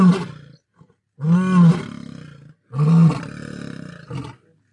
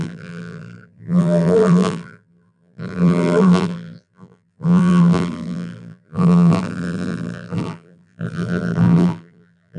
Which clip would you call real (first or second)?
first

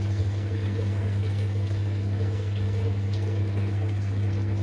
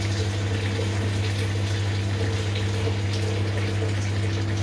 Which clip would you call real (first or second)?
second